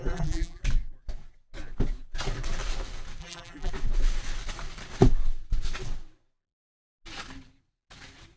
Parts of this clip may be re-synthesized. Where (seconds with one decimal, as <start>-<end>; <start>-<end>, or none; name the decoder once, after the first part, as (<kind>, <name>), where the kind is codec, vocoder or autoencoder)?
0.0-0.6 (vocoder, BigVGAN v2); 3.2-3.7